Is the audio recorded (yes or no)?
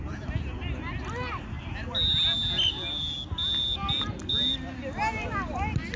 yes